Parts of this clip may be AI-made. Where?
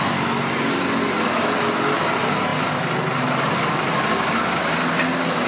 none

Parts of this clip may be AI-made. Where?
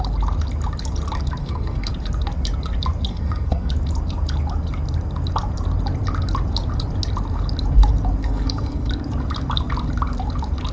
1.4-1.9; 3.1-3.7; 8.2-8.9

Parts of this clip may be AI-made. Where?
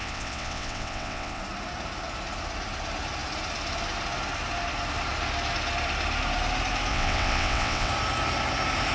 0.0-1.4; 6.9-7.9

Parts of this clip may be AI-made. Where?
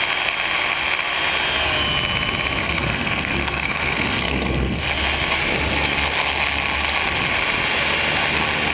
2.6-4.8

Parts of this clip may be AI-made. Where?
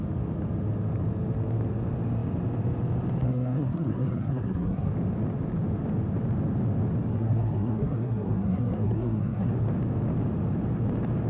3.2-4.9; 7.1-9.5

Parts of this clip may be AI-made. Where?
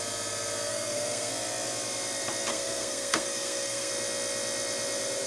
0.7-1.3; 2.5-3.9